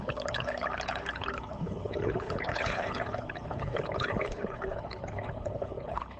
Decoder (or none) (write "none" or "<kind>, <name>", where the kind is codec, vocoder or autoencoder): codec, HILCodec